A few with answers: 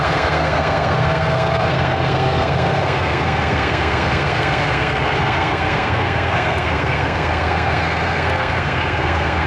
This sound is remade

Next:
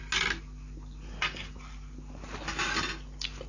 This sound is recorded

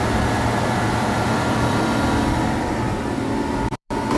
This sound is remade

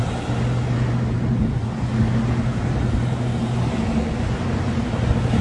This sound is recorded